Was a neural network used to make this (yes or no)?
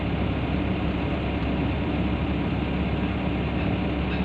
no